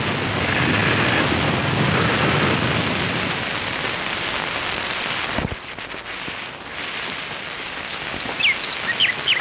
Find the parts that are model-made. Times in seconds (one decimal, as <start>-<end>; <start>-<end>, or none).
none